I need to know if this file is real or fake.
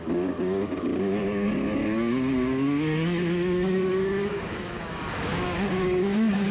fake